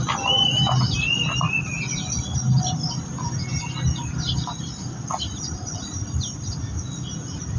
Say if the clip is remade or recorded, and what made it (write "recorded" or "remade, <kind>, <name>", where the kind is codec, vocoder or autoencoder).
recorded